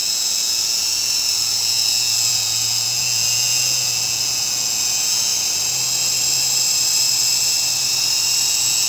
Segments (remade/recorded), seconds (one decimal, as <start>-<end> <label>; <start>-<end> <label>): 0.0-5.3 remade; 5.3-8.5 recorded; 8.5-8.9 remade

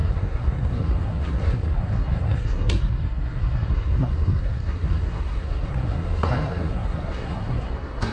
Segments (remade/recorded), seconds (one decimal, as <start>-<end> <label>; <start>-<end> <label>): 0.0-8.1 remade

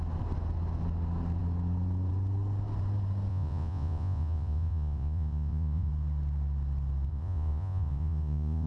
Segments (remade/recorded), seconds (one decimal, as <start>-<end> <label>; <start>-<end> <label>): 0.0-3.3 recorded; 3.3-5.9 remade; 5.9-7.1 recorded; 7.1-8.7 remade

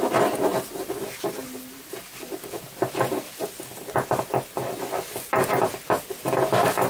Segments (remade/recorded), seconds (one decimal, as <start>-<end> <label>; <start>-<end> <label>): 0.0-6.9 recorded

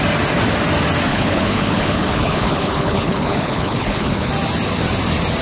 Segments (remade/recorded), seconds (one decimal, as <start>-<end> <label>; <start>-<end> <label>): 0.0-1.1 recorded; 1.1-4.3 remade; 4.3-5.4 recorded

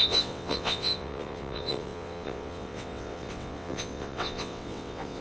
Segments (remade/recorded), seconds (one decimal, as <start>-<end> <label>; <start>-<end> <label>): 0.0-5.2 remade